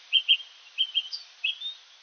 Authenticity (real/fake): real